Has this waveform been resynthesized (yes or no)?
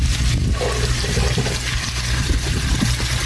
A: no